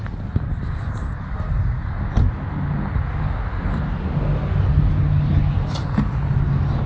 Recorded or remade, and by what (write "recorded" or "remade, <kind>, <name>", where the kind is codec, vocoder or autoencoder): recorded